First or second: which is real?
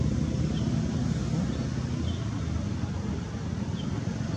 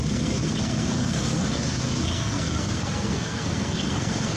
first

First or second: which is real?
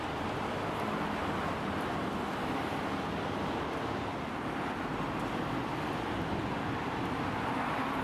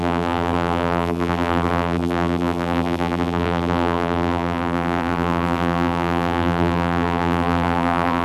first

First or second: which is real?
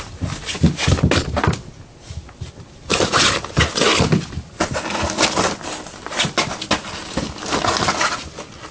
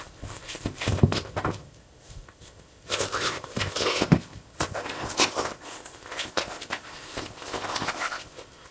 first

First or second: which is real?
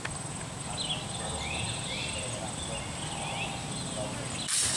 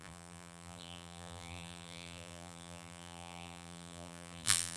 first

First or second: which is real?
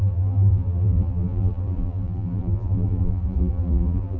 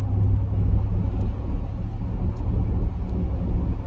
second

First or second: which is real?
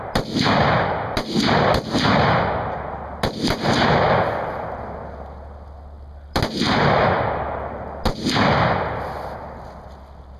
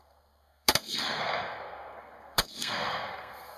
first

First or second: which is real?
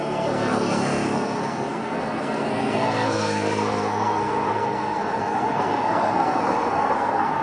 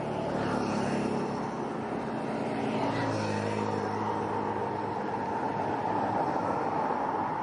second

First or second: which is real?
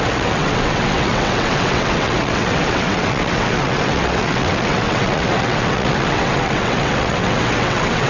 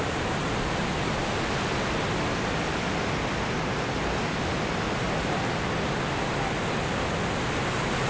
second